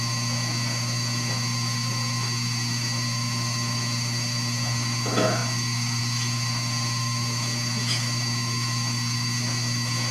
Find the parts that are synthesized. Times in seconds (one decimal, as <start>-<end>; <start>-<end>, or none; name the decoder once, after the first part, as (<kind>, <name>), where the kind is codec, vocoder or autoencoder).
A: 0.0-10.1 (autoencoder, DAC-VAE)